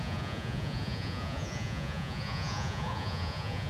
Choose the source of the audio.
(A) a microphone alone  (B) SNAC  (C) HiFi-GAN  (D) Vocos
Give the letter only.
D